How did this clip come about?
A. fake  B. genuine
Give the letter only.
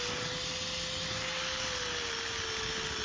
B